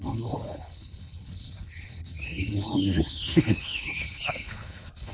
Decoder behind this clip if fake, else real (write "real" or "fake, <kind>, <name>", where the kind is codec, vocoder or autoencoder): fake, codec, HILCodec